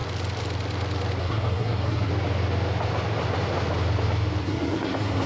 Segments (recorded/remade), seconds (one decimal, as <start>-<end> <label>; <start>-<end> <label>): 0.0-1.2 recorded; 1.2-2.1 remade; 2.1-4.4 recorded; 4.4-5.3 remade